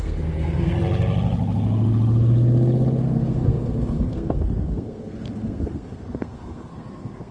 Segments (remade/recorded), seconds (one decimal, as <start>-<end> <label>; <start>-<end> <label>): 0.0-0.7 remade; 0.7-3.0 recorded; 3.0-7.3 remade